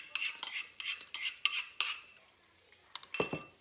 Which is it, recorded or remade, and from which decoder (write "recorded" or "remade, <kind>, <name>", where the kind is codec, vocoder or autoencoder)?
recorded